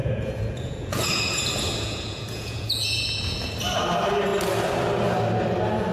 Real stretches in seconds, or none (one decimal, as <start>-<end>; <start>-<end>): 3.5-5.9